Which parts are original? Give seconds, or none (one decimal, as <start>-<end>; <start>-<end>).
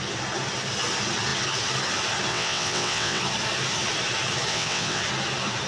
0.0-2.3; 3.2-4.5; 5.0-5.7